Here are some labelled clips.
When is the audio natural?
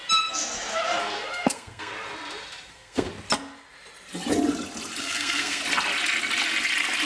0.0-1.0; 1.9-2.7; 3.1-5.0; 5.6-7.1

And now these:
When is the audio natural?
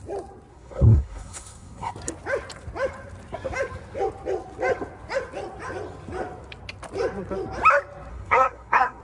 0.0-0.5; 1.9-8.1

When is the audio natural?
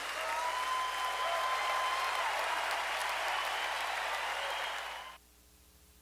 0.0-6.0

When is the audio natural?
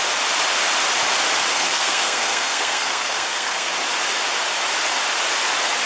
0.0-1.5; 3.7-5.9